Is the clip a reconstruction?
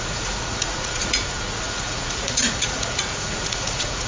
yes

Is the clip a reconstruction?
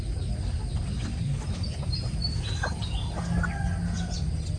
no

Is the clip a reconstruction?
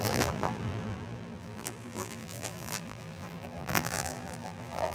yes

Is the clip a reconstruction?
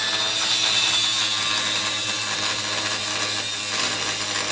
no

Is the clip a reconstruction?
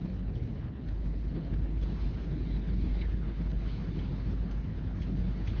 yes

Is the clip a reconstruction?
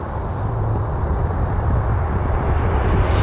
no